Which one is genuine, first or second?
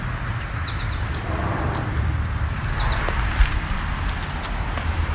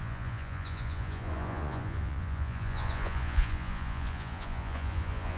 first